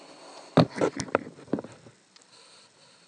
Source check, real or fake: real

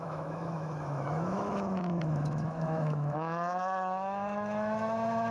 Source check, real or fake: fake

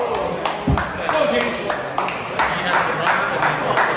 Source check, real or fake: real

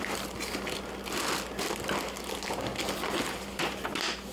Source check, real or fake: real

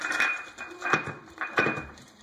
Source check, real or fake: fake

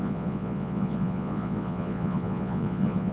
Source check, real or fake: fake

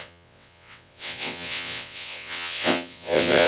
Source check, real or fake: fake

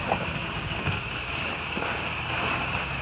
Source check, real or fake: fake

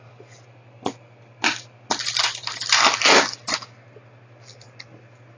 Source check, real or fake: real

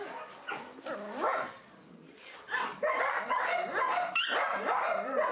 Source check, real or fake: fake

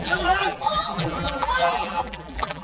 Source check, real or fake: fake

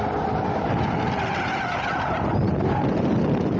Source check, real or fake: real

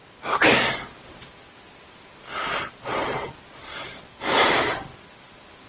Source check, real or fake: real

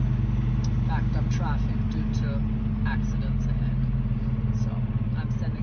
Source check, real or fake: real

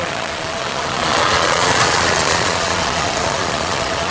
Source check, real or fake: fake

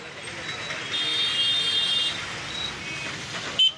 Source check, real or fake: real